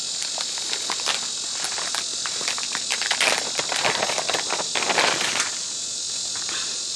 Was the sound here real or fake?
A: real